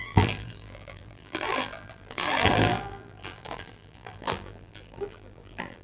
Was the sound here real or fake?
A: fake